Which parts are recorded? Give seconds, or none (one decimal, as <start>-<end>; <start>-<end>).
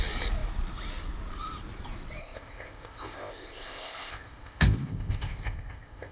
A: 0.0-2.2